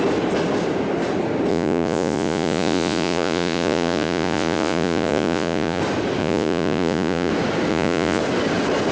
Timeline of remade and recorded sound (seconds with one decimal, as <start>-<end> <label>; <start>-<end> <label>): 0.0-1.5 recorded; 1.5-5.8 remade; 5.8-6.2 recorded; 6.2-7.3 remade; 7.3-7.7 recorded; 7.7-8.2 remade; 8.2-8.9 recorded